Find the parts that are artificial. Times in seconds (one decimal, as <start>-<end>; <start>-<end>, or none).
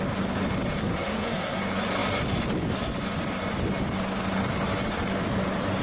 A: 0.8-1.6